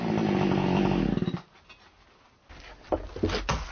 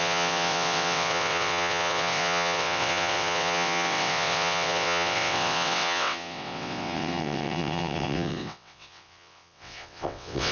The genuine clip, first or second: first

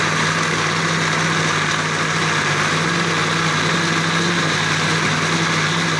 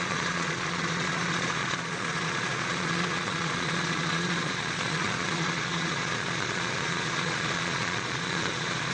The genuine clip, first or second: first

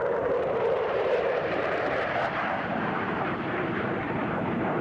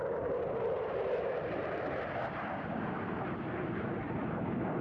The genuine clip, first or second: second